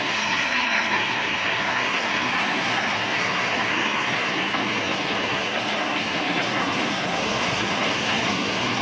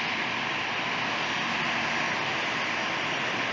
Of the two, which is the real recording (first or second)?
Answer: second